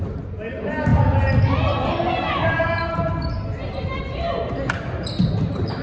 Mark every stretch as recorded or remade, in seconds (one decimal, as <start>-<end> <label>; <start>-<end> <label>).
0.0-5.8 recorded